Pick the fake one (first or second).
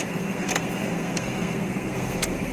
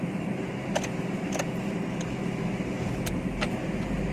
first